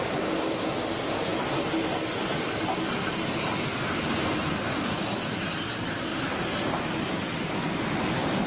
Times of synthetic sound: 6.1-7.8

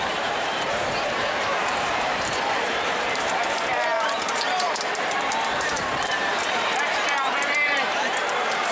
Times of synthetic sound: 0.0-8.7

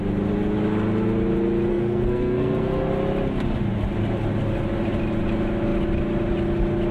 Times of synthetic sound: 1.7-2.9

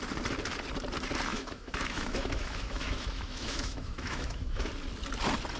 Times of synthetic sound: 1.3-4.7

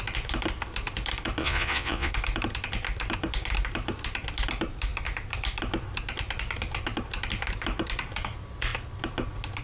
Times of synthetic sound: 1.4-2.1